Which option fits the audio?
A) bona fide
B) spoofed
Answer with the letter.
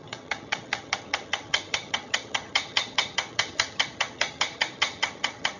B